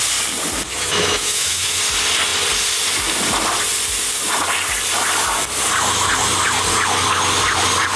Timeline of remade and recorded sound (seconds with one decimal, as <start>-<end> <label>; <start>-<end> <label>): 0.0-0.7 recorded; 0.7-1.8 remade; 1.8-8.0 recorded